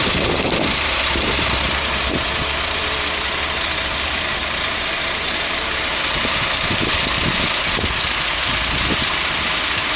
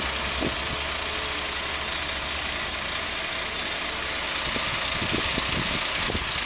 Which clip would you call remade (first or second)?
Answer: first